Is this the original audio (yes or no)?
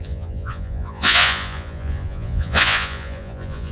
no